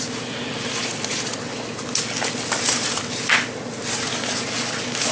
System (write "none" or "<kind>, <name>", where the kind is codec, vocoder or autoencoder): none